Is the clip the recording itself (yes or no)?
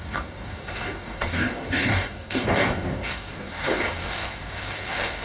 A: no